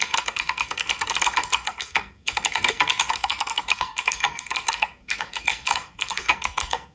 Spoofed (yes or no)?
yes